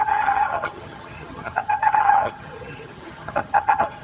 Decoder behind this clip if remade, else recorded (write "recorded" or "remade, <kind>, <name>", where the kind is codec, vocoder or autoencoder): remade, vocoder, HiFi-GAN